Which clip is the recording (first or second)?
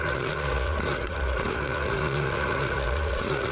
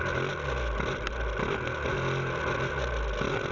second